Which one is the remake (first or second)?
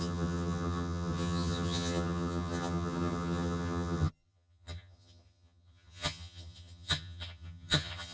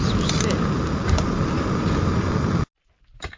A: first